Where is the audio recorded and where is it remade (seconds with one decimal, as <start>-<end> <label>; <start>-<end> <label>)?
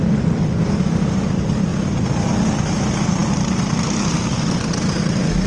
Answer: 0.0-5.5 recorded